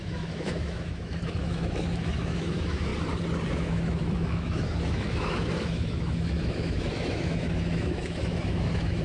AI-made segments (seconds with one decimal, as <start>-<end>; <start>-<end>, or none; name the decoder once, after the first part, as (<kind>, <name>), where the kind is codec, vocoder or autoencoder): 0.0-2.9 (autoencoder, DAC-VAE); 3.5-9.0